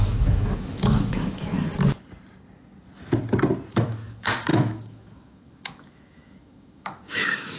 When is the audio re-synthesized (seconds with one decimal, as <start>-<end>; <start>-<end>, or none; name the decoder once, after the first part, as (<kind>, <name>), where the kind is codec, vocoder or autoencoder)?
0.0-1.5 (autoencoder, DAC-VAE); 3.7-7.6